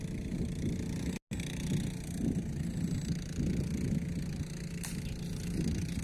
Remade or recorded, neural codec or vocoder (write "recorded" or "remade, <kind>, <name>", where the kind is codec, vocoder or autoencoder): recorded